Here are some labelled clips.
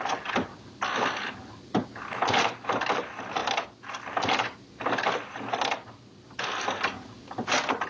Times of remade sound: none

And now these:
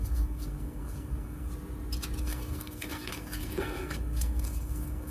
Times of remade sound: 0.0-1.5 (codec, SNAC); 2.2-5.1

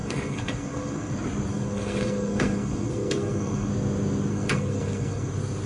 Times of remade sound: 0.0-1.1 (codec, SNAC); 1.5-3.7; 4.3-5.3

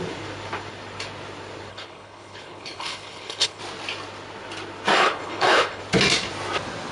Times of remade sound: 1.7-3.6 (codec, HILCodec); 5.0-5.8

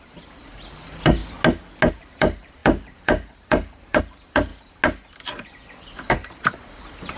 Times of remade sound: 0.0-1.2 (vocoder, BigVGAN v2); 1.9-4.5; 5.8-7.2

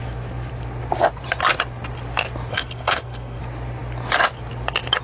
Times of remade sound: 2.5-3.4 (codec, SNAC)

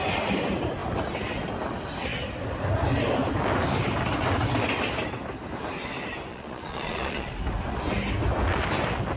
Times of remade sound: 6.3-7.3 (vocoder, Vocos)

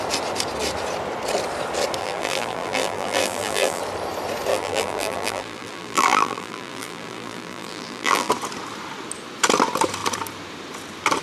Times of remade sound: 2.0-3.8 (vocoder, BigVGAN v2); 4.5-8.3